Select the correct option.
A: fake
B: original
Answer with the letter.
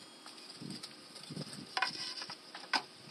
B